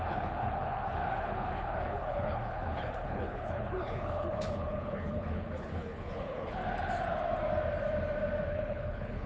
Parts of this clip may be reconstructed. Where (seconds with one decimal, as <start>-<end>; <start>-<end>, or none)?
0.0-6.6; 8.5-9.3